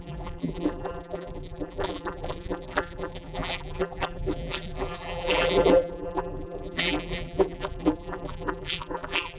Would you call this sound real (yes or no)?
no